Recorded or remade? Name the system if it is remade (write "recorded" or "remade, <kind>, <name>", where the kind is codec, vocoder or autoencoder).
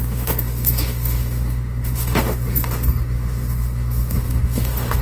remade, autoencoder, DAC-VAE